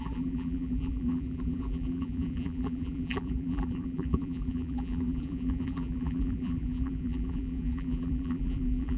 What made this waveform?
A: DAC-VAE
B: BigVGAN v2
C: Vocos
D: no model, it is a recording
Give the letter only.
B